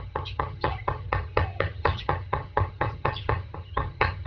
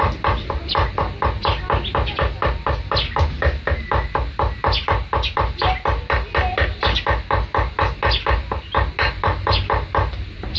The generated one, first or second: first